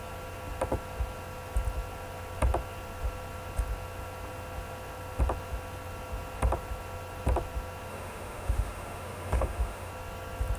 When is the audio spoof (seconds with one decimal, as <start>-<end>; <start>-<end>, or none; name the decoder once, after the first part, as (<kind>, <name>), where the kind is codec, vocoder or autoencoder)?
7.9-9.9 (autoencoder, DAC-VAE)